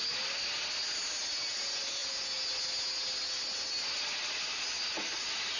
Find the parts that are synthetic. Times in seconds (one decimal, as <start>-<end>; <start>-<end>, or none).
none